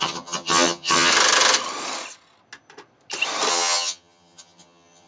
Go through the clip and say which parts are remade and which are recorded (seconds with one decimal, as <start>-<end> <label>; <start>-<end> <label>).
0.0-1.1 remade; 1.1-3.5 recorded; 3.5-5.1 remade